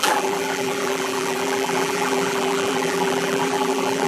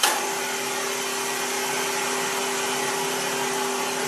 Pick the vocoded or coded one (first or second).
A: first